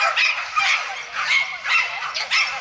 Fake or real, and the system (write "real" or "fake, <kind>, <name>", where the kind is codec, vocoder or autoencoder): real